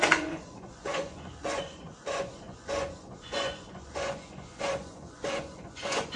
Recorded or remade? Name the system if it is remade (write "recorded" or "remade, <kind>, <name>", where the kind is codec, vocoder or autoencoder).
remade, vocoder, Vocos